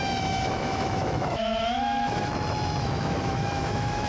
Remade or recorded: remade